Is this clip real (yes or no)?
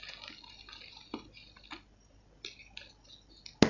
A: yes